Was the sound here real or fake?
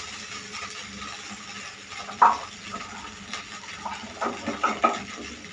real